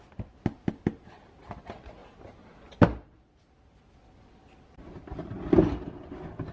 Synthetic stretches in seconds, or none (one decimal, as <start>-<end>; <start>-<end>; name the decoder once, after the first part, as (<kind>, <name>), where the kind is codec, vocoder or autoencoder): none